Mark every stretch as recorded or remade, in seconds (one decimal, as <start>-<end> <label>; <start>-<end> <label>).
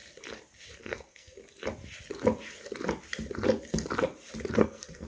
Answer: 0.0-0.8 recorded; 0.8-1.4 remade; 1.4-4.5 recorded; 4.5-5.1 remade